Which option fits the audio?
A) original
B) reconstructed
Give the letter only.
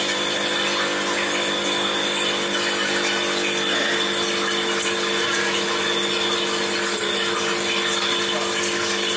A